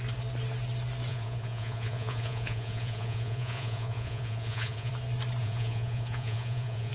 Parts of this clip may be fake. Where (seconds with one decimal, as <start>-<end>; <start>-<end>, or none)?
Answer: 1.1-4.9; 5.4-6.9